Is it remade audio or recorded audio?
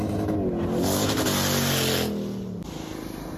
recorded